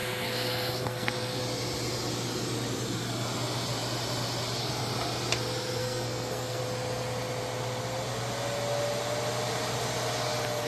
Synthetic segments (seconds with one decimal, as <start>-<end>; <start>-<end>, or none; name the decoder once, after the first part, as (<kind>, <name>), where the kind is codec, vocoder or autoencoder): 0.0-1.4 (codec, SNAC); 5.8-6.6